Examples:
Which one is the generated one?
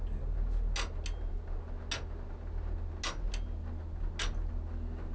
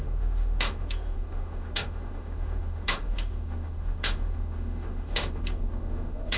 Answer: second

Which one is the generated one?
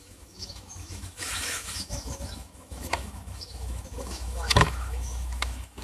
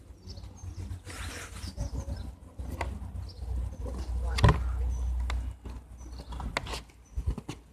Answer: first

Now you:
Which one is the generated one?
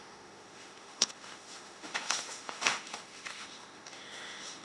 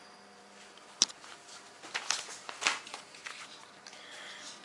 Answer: first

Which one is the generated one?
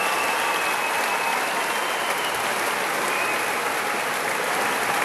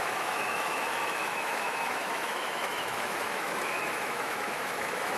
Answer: second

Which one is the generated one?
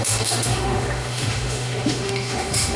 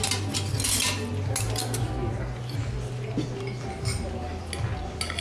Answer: first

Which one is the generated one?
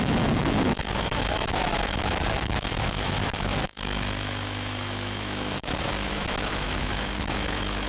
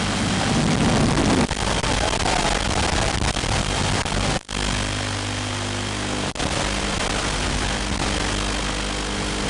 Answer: first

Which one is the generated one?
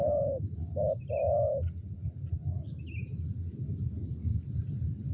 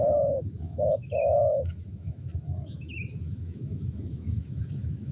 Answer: second